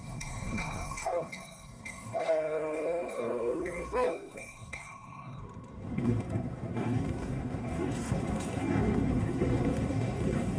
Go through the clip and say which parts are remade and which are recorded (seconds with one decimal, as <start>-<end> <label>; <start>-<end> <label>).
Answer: 0.0-10.6 remade